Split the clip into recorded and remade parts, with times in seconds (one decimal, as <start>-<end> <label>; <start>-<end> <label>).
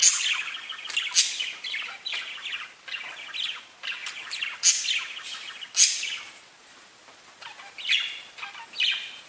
0.0-9.3 recorded